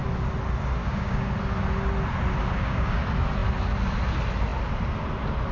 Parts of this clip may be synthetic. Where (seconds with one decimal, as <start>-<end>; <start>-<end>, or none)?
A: 0.8-1.3; 2.4-3.0